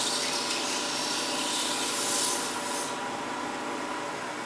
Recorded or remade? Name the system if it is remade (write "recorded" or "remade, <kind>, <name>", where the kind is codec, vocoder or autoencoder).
recorded